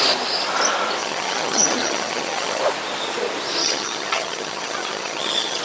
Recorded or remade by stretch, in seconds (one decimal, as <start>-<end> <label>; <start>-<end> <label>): 0.0-1.0 recorded; 1.0-2.6 remade; 2.6-3.6 recorded; 3.6-5.6 remade